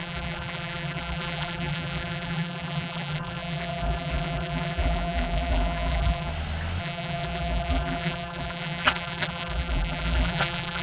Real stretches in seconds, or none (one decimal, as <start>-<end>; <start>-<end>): 6.3-6.8